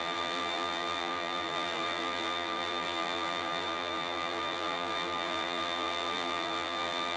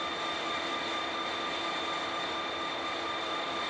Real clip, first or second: second